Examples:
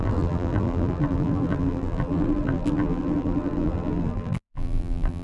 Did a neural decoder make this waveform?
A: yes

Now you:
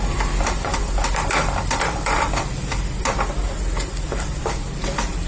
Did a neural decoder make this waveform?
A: no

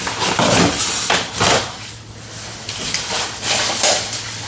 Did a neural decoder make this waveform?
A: no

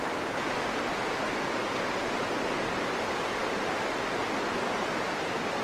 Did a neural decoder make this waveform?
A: no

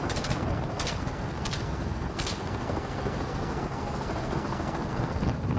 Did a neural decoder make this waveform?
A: yes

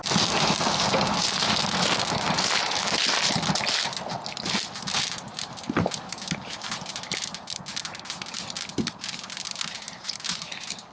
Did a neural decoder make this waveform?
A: no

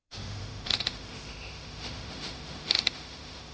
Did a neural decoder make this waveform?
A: yes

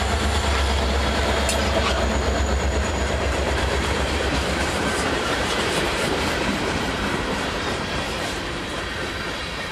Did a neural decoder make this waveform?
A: yes